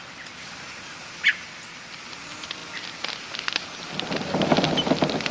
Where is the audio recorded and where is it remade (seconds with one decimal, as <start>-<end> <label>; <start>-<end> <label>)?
0.0-5.3 recorded